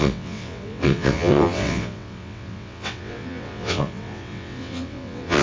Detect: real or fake fake